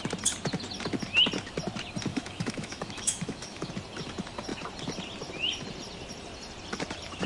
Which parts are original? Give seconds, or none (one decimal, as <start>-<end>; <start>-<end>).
0.0-2.1; 3.7-7.3